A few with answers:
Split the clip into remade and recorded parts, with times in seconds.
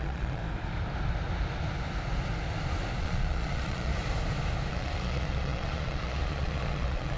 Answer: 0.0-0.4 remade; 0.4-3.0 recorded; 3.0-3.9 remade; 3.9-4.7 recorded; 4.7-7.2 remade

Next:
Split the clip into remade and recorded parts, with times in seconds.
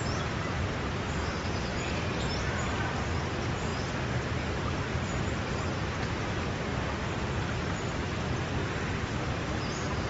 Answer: 0.0-6.7 recorded; 6.7-8.1 remade; 8.1-10.1 recorded